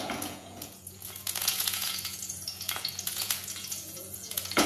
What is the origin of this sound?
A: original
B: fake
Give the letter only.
B